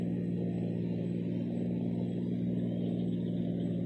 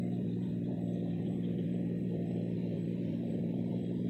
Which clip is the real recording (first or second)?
first